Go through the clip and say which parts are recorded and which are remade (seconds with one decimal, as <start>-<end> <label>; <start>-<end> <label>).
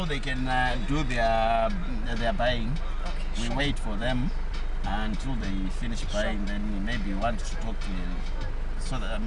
0.0-4.0 recorded; 4.0-5.5 remade; 5.5-9.3 recorded